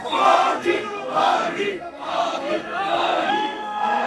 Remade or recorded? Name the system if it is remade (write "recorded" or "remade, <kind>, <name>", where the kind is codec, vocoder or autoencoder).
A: remade, codec, SNAC